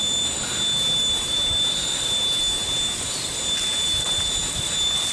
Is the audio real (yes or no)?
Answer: yes